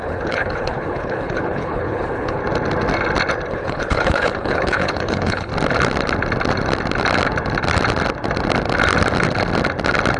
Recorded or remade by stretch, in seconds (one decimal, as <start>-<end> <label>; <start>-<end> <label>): 0.0-2.4 remade; 2.4-3.5 recorded; 3.5-5.5 remade; 5.5-10.2 recorded